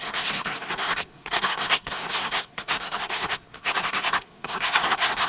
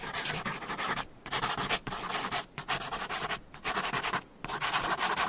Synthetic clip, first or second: first